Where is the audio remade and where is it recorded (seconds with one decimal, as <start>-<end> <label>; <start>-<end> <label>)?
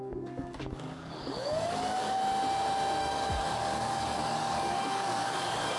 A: 0.0-2.2 remade; 2.2-3.0 recorded; 3.0-5.8 remade